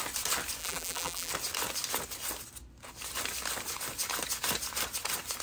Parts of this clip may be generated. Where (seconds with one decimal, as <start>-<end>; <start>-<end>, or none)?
0.6-1.3